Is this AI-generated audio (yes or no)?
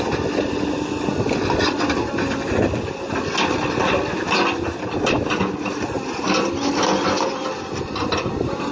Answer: no